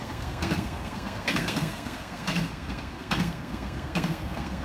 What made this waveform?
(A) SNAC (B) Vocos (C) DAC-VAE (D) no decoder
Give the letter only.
A